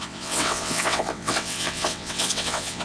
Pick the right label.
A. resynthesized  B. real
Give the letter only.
A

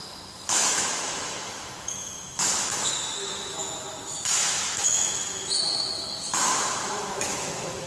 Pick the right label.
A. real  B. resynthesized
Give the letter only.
B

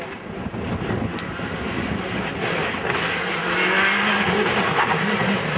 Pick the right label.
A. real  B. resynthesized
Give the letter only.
A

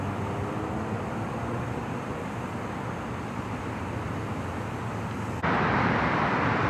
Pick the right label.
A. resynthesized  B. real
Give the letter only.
B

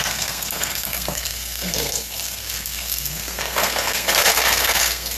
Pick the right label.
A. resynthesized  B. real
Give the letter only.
A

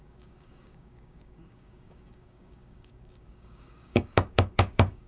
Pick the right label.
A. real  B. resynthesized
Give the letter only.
B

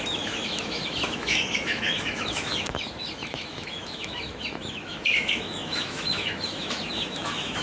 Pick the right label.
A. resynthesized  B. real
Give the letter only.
A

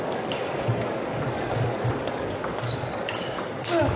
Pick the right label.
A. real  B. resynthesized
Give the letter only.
B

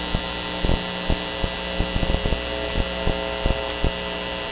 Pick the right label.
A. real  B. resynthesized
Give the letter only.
A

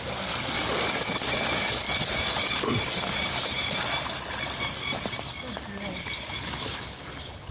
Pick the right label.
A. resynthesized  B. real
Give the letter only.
B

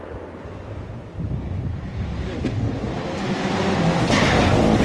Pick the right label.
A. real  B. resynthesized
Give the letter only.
A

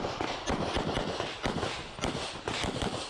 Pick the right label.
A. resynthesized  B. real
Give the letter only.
B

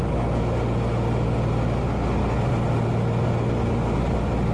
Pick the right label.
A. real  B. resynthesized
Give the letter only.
A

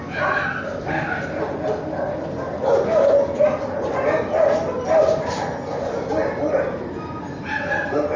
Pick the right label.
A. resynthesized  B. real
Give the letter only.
B